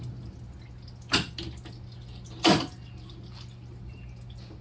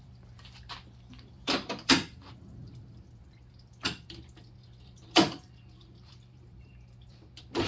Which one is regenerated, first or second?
second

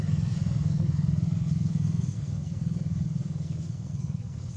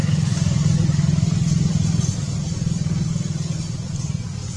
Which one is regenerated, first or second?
first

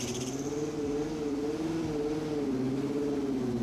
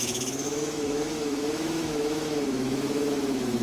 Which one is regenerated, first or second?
second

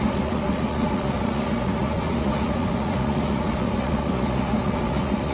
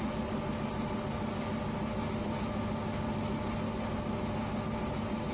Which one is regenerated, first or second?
first